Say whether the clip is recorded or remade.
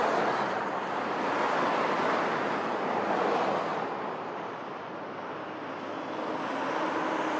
recorded